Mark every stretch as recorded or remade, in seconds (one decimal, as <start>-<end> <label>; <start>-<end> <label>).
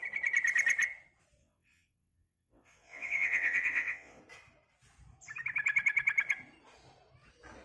0.0-1.4 recorded; 1.4-4.2 remade; 4.2-7.6 recorded